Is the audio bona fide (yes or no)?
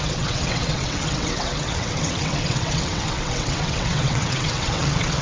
no